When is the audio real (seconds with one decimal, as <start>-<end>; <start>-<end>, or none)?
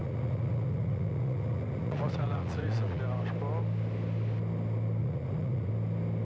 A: 3.0-5.0; 5.7-6.2